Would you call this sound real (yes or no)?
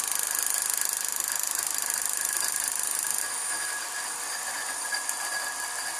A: yes